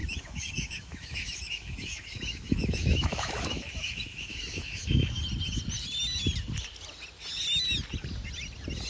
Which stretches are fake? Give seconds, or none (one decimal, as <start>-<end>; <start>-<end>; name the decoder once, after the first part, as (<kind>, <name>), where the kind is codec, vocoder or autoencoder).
0.0-5.2 (autoencoder, DAC-VAE)

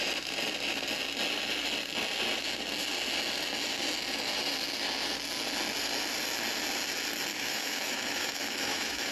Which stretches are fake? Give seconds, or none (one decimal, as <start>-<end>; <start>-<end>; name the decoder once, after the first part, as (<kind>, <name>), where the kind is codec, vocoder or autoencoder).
7.3-9.1 (autoencoder, DAC-VAE)

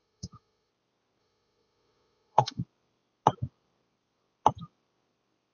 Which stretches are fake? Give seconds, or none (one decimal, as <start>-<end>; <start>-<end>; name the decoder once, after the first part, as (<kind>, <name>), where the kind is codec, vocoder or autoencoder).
0.0-0.7 (autoencoder, DAC-VAE); 1.2-2.6

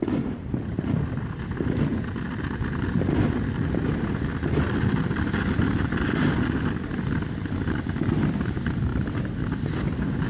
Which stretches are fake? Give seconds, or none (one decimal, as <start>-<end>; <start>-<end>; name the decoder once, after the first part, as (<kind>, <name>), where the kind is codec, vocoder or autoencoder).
none